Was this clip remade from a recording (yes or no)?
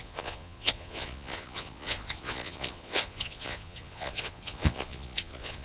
yes